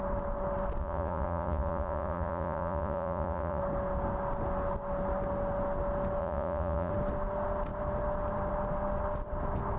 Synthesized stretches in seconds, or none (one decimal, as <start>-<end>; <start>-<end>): 0.8-3.6; 6.2-6.9